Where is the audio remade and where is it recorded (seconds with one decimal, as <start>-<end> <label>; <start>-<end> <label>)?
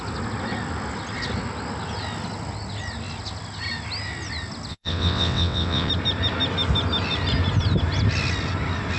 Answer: 0.0-4.7 recorded; 4.7-5.9 remade; 5.9-9.0 recorded